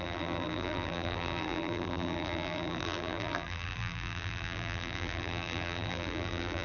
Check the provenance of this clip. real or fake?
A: fake